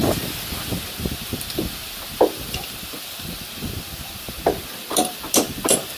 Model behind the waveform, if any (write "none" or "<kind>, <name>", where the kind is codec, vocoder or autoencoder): none